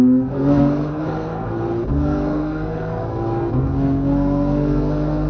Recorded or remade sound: remade